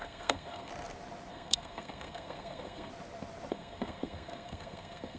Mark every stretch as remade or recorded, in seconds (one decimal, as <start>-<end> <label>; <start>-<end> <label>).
0.0-0.7 remade; 0.7-1.3 recorded; 1.3-2.9 remade; 2.9-3.5 recorded; 3.5-5.2 remade